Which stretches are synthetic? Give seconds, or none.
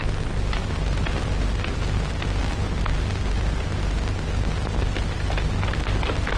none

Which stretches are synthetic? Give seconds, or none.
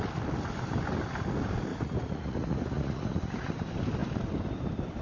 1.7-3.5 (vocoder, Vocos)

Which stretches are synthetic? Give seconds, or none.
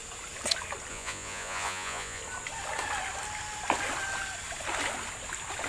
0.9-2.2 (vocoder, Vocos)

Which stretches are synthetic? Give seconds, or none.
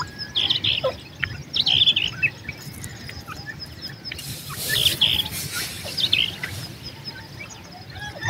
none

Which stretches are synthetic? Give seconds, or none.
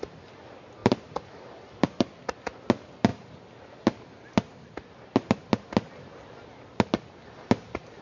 0.8-2.2 (vocoder, BigVGAN v2)